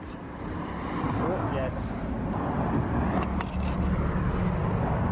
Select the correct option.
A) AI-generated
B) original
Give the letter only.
B